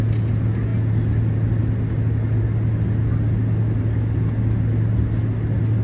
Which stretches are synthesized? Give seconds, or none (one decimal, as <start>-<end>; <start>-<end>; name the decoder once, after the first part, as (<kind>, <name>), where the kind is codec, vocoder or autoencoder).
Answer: none